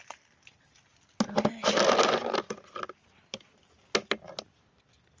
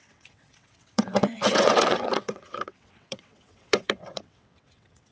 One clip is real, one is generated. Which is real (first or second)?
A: first